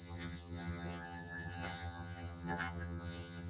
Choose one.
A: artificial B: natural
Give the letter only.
A